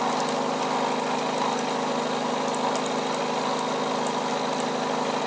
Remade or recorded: recorded